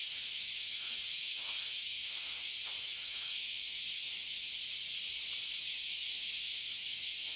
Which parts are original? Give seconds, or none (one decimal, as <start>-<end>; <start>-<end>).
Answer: 4.5-5.6